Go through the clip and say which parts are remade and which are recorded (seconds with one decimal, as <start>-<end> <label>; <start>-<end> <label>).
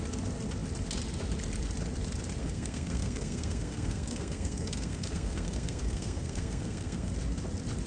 0.0-2.4 recorded; 2.4-7.1 remade; 7.1-7.9 recorded